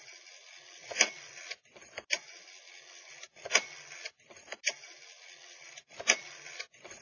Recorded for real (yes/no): yes